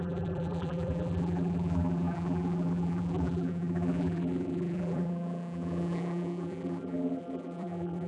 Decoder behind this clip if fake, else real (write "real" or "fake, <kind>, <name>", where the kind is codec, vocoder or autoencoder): fake, vocoder, BigVGAN v2